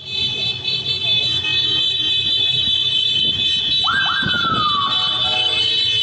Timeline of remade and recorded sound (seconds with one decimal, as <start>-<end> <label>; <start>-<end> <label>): 0.0-6.0 recorded